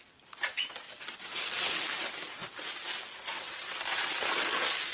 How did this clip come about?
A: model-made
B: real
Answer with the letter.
B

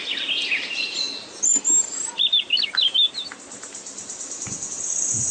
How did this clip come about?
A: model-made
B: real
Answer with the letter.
B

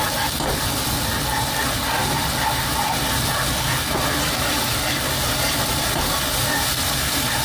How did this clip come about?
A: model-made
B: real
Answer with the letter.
B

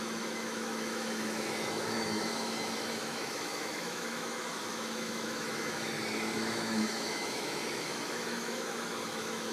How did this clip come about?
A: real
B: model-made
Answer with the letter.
B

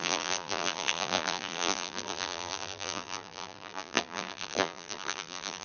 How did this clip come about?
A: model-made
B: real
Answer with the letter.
A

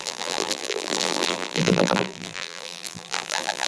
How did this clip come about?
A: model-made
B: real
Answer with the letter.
A